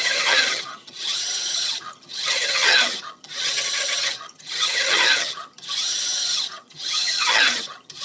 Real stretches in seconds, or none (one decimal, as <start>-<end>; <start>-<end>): none